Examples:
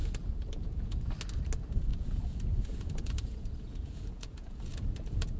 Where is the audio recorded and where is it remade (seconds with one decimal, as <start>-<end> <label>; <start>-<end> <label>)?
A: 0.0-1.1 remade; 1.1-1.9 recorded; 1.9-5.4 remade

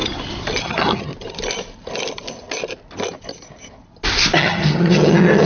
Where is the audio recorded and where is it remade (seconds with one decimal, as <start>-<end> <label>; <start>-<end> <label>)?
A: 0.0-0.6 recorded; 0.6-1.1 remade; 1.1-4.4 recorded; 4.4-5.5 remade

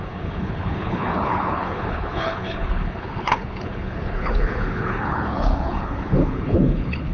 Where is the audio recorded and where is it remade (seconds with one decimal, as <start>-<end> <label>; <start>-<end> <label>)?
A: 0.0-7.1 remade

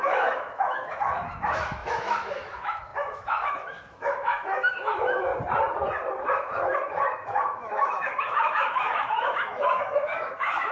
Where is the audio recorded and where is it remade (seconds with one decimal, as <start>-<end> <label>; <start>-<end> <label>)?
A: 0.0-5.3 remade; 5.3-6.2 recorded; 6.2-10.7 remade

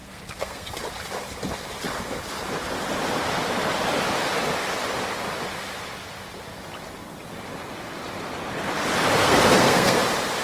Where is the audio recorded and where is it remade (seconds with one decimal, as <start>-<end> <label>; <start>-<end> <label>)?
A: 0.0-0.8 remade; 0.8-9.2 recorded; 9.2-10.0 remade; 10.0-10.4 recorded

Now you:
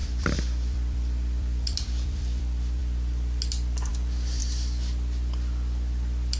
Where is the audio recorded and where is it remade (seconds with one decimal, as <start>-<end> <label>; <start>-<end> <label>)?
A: 0.0-2.4 remade; 2.4-6.4 recorded

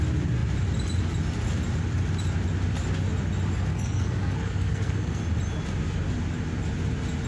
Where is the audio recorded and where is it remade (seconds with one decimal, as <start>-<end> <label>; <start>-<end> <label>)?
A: 0.0-3.7 recorded; 3.7-5.2 remade; 5.2-7.3 recorded